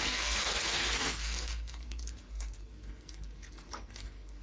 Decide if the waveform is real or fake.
fake